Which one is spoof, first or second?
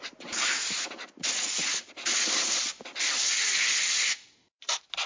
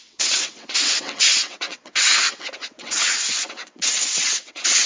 second